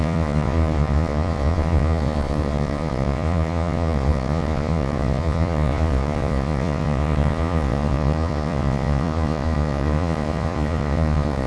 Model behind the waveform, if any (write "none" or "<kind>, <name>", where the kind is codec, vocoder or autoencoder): vocoder, Vocos